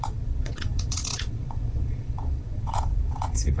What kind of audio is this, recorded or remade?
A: remade